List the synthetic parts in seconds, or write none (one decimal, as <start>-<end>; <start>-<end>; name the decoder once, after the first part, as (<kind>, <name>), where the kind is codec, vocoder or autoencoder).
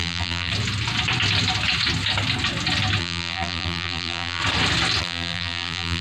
0.0-0.5 (vocoder, BigVGAN v2); 3.0-4.4; 5.0-6.0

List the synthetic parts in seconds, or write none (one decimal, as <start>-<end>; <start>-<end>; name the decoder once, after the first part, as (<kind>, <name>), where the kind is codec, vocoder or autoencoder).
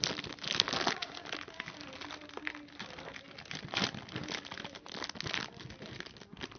4.2-4.9 (vocoder, BigVGAN v2)